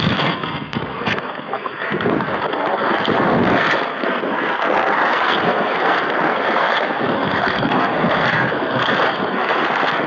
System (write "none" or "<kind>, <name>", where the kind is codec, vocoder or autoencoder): codec, SNAC